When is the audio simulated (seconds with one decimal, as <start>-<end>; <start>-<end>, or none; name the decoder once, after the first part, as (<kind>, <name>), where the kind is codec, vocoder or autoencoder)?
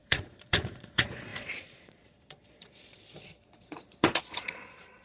0.0-5.0 (vocoder, Vocos)